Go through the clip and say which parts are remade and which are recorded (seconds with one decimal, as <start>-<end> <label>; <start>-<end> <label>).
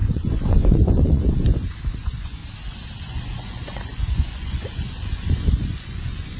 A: 0.0-2.4 remade; 2.4-3.0 recorded; 3.0-6.4 remade